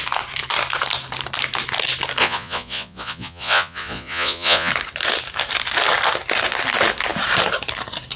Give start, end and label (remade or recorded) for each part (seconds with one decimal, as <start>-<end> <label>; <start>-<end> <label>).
0.0-2.2 recorded; 2.2-4.7 remade; 4.7-8.2 recorded